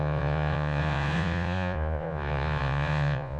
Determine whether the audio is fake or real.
fake